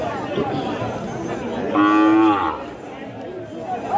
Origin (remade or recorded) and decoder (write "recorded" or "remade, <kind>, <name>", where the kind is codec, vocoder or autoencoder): recorded